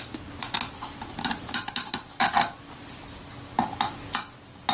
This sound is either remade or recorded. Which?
recorded